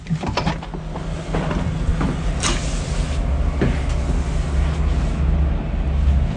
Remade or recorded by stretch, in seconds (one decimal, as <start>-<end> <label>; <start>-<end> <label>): 0.0-6.4 recorded